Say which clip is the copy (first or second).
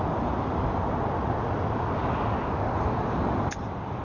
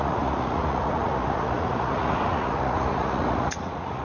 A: second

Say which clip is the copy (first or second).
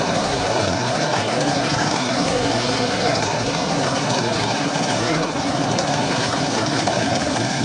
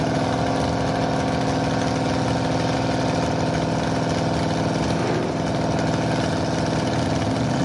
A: first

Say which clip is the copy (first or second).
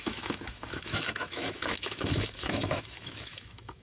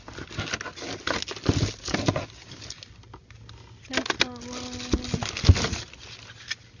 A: first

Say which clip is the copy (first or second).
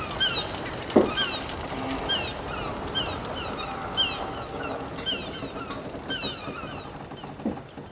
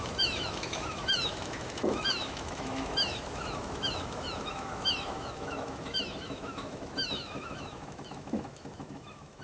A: second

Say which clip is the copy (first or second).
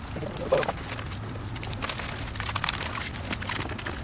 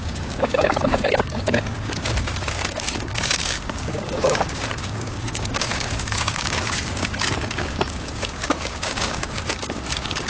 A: second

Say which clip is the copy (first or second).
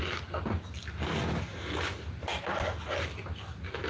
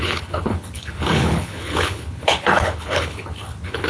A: second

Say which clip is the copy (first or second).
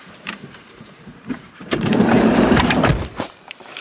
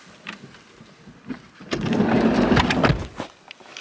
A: first